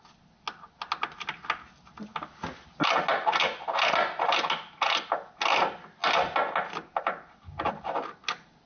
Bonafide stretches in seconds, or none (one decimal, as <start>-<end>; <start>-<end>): 0.0-8.7